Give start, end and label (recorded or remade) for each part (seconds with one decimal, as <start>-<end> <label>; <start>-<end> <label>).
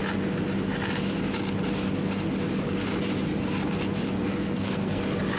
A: 0.0-4.2 recorded; 4.2-5.0 remade; 5.0-5.4 recorded